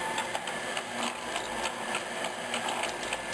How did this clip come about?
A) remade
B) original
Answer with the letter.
B